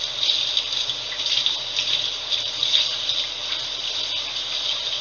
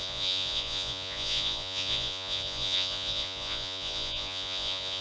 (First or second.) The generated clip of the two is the second